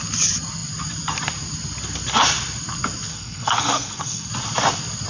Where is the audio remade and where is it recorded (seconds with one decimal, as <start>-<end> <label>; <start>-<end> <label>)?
0.0-3.1 recorded; 3.1-4.3 remade; 4.3-5.1 recorded